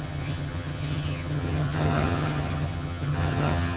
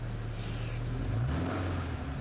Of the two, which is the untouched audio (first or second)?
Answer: second